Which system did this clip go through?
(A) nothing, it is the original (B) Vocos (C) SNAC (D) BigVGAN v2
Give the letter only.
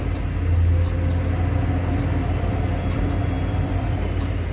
A